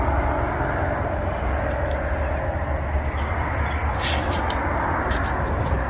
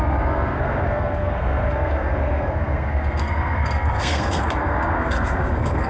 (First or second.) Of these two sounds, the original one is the first